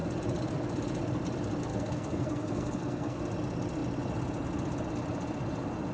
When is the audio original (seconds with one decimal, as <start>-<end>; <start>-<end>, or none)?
0.0-1.7; 3.2-5.9